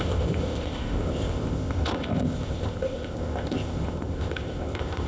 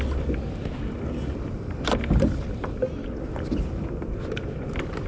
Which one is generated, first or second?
first